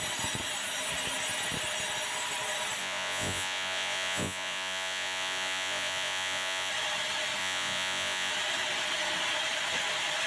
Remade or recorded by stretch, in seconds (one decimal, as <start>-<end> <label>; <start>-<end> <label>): 0.0-2.8 recorded; 2.8-6.7 remade; 6.7-7.4 recorded; 7.4-8.3 remade; 8.3-10.3 recorded